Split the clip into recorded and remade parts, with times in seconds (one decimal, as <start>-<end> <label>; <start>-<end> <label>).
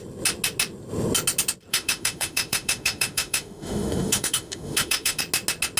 0.0-1.7 recorded; 1.7-5.2 remade; 5.2-5.8 recorded